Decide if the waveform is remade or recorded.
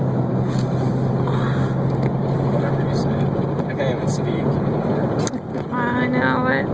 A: recorded